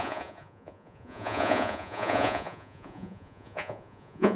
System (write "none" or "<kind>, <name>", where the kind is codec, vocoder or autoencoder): vocoder, Vocos